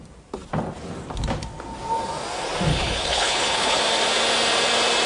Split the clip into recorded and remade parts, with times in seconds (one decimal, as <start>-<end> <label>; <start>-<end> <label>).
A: 0.0-2.7 recorded; 2.7-3.8 remade; 3.8-5.1 recorded